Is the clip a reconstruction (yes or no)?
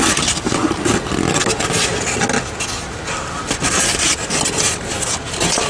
no